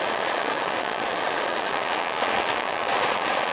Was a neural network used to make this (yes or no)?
yes